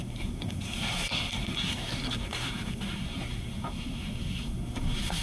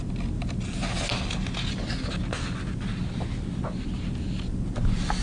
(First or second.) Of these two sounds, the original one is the second